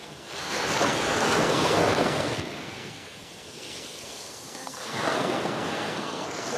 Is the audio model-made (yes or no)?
yes